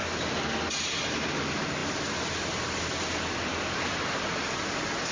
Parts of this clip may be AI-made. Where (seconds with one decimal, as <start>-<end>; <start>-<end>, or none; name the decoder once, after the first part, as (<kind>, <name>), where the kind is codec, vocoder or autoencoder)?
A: none